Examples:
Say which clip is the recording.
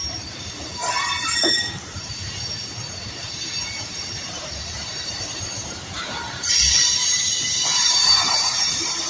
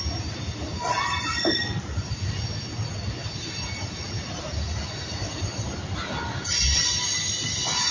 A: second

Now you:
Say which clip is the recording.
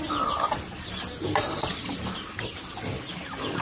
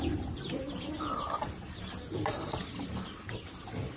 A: first